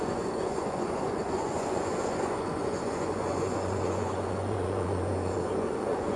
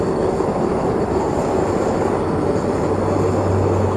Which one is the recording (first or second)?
second